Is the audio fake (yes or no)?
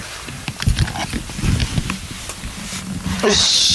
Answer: no